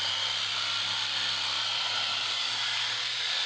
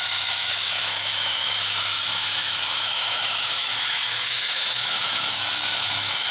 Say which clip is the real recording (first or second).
first